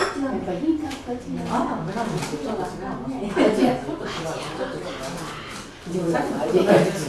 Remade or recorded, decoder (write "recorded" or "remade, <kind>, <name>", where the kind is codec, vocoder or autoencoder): recorded